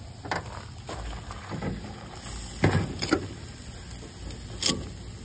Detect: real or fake real